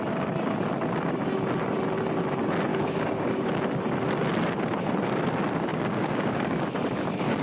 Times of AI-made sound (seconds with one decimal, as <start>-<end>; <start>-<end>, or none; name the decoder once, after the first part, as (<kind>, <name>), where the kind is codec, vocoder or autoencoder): 2.7-3.6 (codec, DAC); 5.7-6.6